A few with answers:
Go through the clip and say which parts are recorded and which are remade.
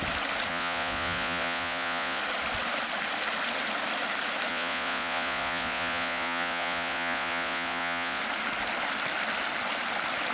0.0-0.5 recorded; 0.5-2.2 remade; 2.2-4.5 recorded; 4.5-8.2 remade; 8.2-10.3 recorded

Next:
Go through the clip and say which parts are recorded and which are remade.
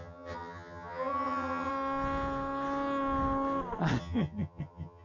0.0-1.7 remade; 1.7-4.0 recorded; 4.0-5.0 remade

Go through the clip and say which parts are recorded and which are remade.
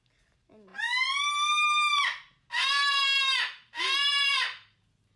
0.0-5.2 recorded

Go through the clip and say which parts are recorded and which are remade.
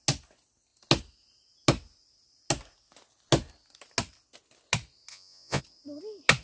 0.0-5.1 recorded; 5.1-5.6 remade; 5.6-6.4 recorded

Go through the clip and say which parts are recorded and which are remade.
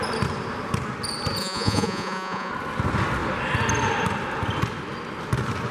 0.0-1.4 recorded; 1.4-2.5 remade; 2.5-5.7 recorded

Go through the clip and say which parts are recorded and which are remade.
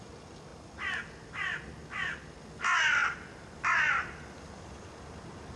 0.0-5.6 recorded